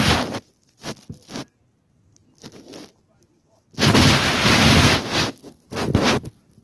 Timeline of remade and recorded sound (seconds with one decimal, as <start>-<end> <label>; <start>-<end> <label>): 0.0-6.6 recorded